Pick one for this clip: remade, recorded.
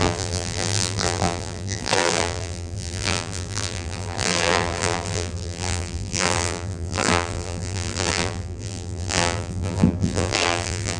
remade